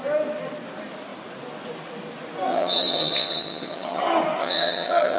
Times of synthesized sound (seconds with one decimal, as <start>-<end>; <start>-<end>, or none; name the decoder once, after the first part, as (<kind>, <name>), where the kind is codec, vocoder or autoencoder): 2.5-4.0 (vocoder, HiFi-GAN); 4.4-5.2